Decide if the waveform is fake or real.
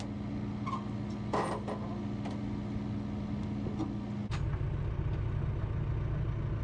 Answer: real